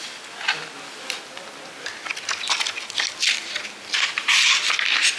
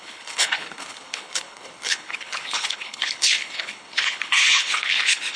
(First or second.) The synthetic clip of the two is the second